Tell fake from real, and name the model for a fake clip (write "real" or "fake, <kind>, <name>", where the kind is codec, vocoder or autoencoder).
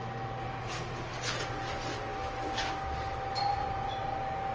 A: real